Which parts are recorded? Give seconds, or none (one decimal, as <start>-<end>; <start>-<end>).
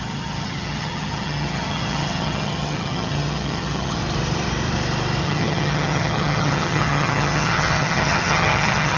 4.0-5.2